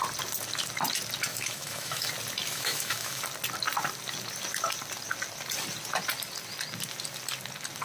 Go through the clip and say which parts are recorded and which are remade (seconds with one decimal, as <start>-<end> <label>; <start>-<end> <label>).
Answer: 0.0-1.3 recorded; 1.3-2.1 remade; 2.1-2.5 recorded; 2.5-3.2 remade; 3.2-7.8 recorded